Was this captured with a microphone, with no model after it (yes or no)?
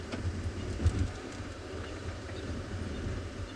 no